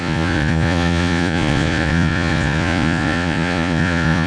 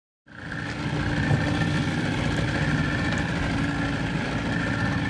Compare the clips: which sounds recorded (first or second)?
second